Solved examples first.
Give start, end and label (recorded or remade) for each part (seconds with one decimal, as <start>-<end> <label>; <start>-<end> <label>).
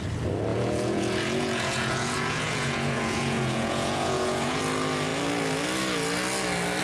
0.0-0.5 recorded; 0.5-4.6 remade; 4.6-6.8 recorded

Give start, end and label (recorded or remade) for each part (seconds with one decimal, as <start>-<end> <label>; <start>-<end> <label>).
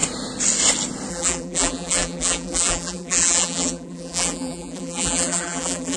0.0-1.1 recorded; 1.1-6.0 remade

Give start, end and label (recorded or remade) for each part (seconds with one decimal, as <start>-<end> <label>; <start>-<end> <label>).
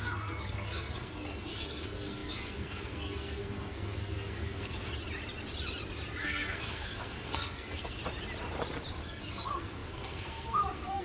0.0-4.9 remade; 4.9-6.2 recorded; 6.2-8.0 remade; 8.0-9.0 recorded; 9.0-11.0 remade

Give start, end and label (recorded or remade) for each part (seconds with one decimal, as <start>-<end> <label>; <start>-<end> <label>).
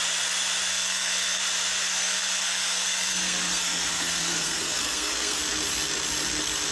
0.0-0.7 recorded; 0.7-1.4 remade; 1.4-2.0 recorded; 2.0-5.4 remade; 5.4-6.7 recorded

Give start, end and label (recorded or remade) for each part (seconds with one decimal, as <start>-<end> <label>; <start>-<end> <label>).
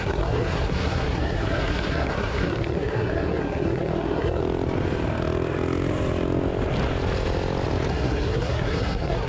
0.0-4.4 remade; 4.4-7.9 recorded; 7.9-9.3 remade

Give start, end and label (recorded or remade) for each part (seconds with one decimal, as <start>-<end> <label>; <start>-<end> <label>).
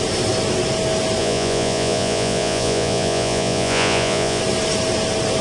0.0-1.2 recorded; 1.2-4.4 remade; 4.4-5.4 recorded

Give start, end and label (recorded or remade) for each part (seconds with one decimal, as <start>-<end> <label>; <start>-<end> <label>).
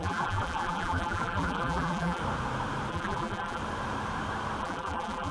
0.0-2.2 remade; 2.2-2.9 recorded; 2.9-3.6 remade; 3.6-4.6 recorded; 4.6-5.3 remade